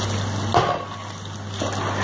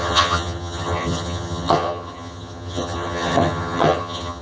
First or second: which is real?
first